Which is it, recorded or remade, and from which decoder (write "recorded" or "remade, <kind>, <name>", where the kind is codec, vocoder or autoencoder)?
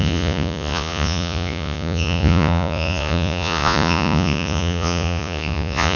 remade, vocoder, Vocos